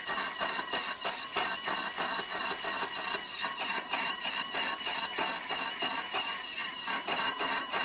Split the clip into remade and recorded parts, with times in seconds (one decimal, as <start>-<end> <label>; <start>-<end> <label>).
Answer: 0.0-3.7 recorded; 3.7-4.3 remade; 4.3-6.6 recorded; 6.6-7.8 remade

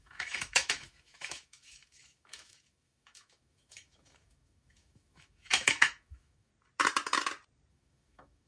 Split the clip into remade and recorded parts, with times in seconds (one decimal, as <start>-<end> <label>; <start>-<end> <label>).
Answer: 0.0-6.5 remade; 6.5-7.7 recorded; 7.7-8.5 remade

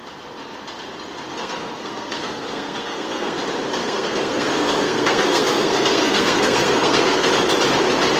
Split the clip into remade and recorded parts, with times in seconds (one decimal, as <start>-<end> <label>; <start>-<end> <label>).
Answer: 0.0-1.3 recorded; 1.3-3.4 remade; 3.4-3.8 recorded; 3.8-7.3 remade; 7.3-8.2 recorded

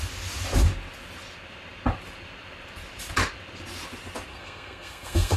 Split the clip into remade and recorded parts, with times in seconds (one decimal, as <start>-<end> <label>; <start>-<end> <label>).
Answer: 0.0-4.3 recorded; 4.3-5.4 remade

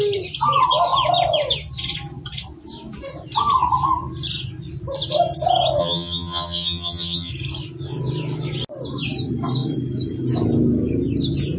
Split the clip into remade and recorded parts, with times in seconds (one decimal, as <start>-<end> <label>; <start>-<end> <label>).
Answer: 0.0-5.8 recorded; 5.8-7.3 remade; 7.3-11.6 recorded

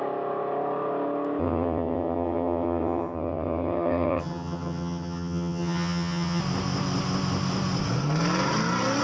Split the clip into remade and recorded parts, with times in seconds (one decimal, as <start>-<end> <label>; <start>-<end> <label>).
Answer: 0.0-1.4 recorded; 1.4-6.4 remade; 6.4-9.0 recorded

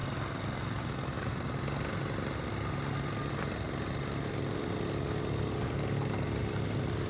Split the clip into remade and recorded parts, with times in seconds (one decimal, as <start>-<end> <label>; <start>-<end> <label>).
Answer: 0.0-7.1 recorded

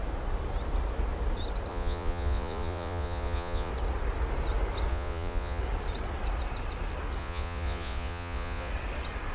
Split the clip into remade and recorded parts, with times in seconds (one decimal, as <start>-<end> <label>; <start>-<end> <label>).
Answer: 0.0-1.7 recorded; 1.7-3.7 remade; 3.7-4.9 recorded; 4.9-5.6 remade; 5.6-7.2 recorded; 7.2-8.7 remade; 8.7-9.3 recorded